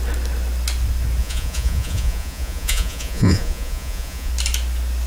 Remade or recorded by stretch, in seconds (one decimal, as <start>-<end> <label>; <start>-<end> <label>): 0.0-1.2 recorded; 1.2-4.3 remade; 4.3-5.1 recorded